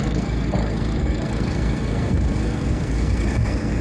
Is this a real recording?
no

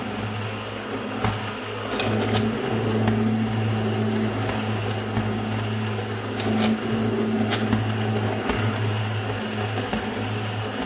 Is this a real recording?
yes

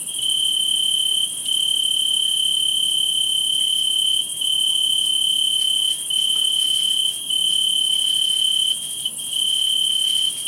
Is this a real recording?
yes